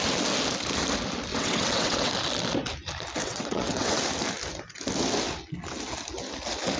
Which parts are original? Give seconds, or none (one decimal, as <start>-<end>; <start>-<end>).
0.0-1.3; 2.1-3.2; 4.0-6.8